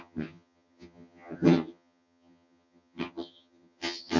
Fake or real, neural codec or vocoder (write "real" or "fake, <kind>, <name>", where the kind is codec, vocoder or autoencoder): fake, vocoder, HiFi-GAN